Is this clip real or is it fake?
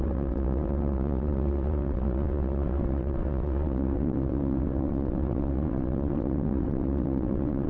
fake